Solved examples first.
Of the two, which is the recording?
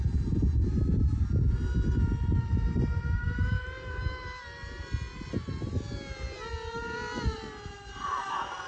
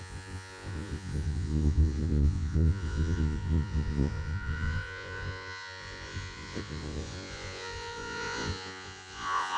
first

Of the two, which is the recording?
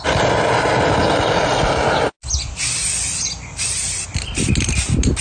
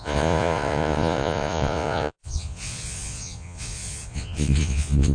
first